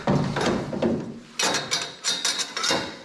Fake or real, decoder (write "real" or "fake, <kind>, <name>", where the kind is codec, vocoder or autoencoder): real